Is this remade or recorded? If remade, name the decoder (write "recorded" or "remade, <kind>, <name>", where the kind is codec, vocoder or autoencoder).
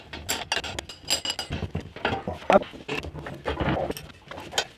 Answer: recorded